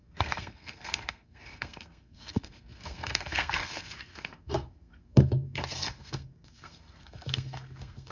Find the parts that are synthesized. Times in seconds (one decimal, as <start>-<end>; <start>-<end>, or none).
0.0-8.1

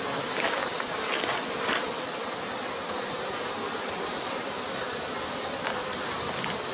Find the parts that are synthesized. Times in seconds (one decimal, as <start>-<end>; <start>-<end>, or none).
none

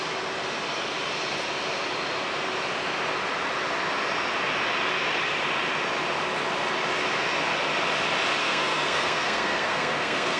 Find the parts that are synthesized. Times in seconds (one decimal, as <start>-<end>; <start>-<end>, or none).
8.4-10.4